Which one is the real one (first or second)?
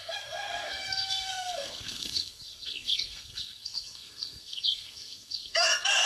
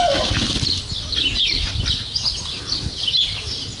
second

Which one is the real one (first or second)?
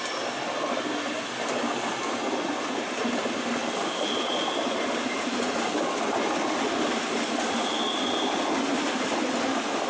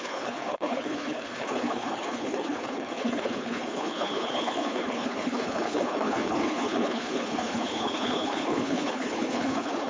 first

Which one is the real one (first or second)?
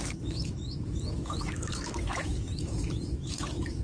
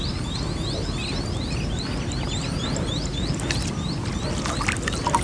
second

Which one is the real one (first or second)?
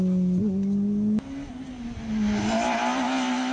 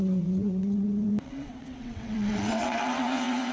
first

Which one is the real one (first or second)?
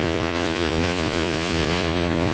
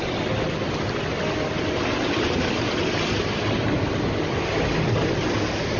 second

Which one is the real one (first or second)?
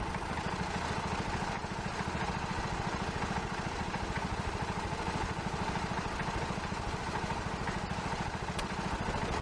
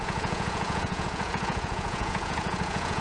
first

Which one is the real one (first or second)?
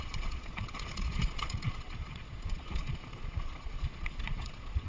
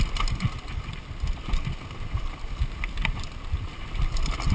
second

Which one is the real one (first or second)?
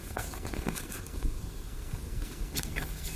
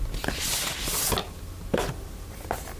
second